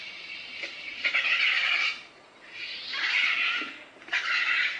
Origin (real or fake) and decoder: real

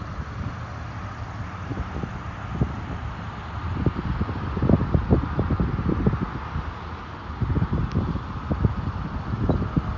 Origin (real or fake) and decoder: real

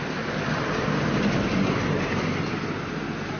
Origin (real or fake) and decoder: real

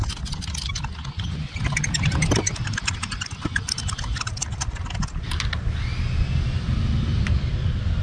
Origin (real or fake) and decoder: real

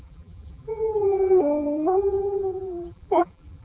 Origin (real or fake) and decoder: fake, vocoder, BigVGAN v2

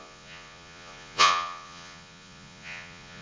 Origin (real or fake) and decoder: fake, vocoder, Vocos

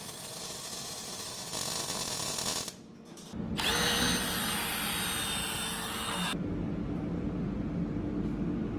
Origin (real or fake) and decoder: real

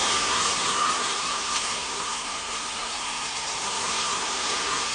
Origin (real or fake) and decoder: fake, codec, SNAC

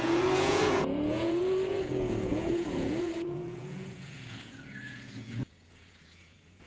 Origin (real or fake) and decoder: fake, vocoder, Vocos